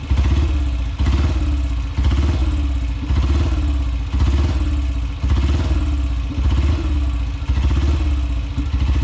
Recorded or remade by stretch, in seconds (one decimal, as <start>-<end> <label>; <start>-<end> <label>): 0.0-9.0 recorded